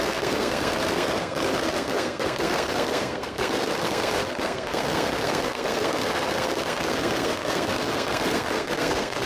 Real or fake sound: fake